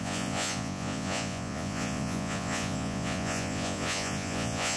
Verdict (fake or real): fake